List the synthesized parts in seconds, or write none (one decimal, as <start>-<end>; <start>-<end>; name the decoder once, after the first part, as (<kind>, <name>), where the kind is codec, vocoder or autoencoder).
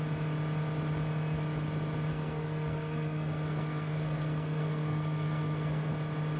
2.1-5.9 (codec, SNAC)